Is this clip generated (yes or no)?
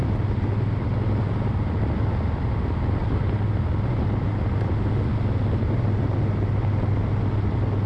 no